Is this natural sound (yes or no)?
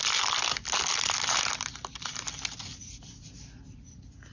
yes